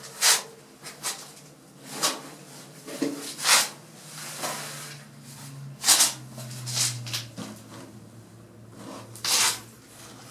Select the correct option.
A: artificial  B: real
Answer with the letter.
B